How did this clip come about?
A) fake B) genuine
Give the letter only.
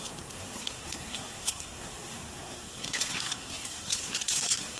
A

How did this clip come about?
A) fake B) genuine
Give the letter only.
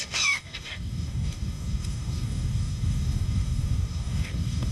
A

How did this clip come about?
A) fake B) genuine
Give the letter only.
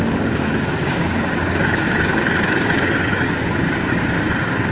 A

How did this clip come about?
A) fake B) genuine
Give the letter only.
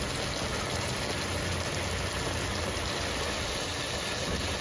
B